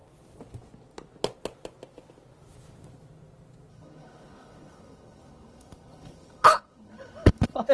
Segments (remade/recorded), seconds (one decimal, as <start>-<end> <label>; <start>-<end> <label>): 0.0-3.7 recorded; 3.7-7.7 remade